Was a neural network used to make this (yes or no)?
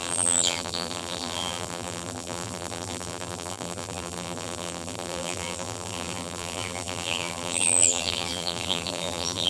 yes